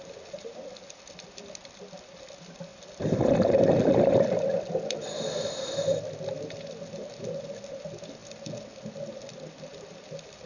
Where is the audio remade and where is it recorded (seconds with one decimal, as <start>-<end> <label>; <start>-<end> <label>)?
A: 0.0-10.5 recorded